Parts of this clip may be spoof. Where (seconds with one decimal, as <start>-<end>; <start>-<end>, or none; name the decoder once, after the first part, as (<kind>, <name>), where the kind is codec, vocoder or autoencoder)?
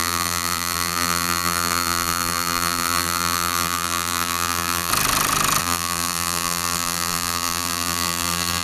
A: 0.0-4.9 (vocoder, BigVGAN v2); 5.6-8.6